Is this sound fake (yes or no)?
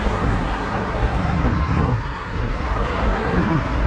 yes